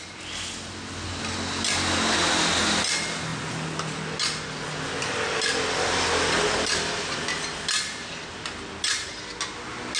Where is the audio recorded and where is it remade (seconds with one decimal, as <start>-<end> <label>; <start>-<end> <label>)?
0.0-10.0 recorded